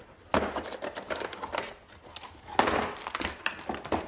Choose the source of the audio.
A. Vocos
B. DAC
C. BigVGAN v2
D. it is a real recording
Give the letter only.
D